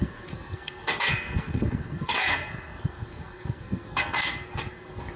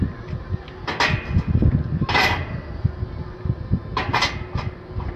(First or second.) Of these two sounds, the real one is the second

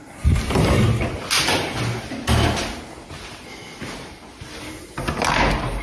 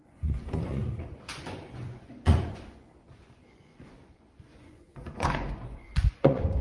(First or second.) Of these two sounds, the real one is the first